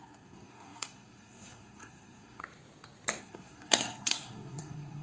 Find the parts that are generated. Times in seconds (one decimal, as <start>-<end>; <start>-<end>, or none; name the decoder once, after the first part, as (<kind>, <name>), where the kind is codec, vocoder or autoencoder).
0.0-2.4 (codec, SNAC); 3.2-5.0